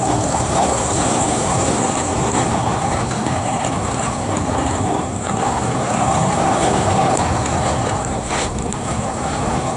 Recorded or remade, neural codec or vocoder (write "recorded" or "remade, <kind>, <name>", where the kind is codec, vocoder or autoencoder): remade, codec, SNAC